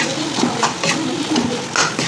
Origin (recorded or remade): recorded